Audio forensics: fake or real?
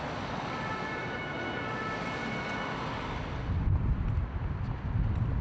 real